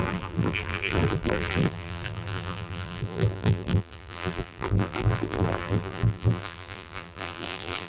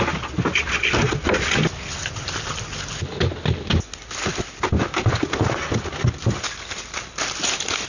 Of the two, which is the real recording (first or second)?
second